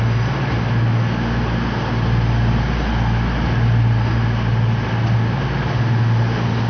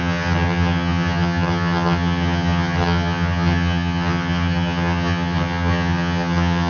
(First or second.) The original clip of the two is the first